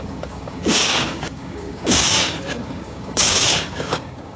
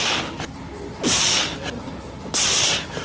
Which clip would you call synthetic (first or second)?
first